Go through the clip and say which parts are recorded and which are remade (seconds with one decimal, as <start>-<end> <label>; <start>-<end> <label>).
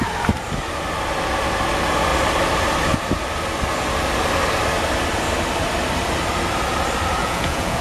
0.0-7.2 recorded; 7.2-7.8 remade